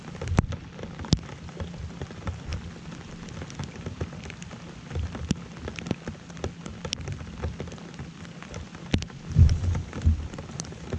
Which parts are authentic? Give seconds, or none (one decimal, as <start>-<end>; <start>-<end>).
0.0-11.0